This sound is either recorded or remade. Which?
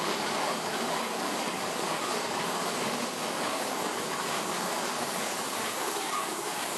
remade